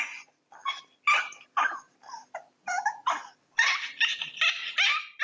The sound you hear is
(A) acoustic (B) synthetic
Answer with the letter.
A